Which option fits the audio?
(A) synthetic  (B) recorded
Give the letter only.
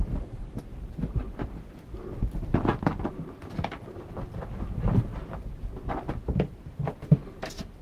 B